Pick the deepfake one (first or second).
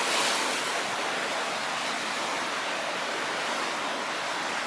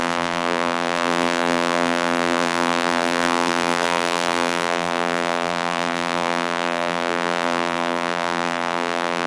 second